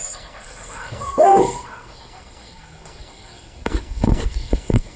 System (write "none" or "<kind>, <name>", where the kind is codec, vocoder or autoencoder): codec, SNAC